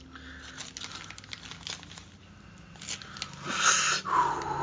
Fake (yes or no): no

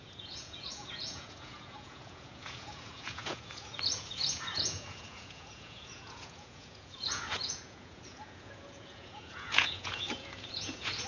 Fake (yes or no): yes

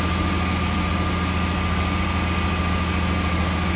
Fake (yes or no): no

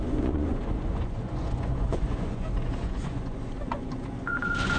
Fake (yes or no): yes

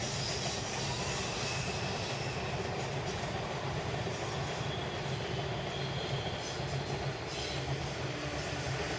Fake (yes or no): no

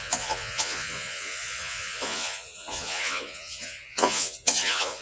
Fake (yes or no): yes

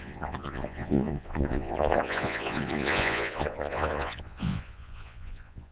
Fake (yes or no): yes